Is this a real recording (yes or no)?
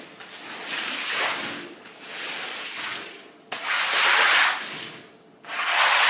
yes